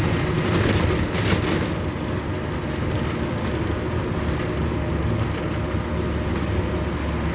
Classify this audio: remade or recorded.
recorded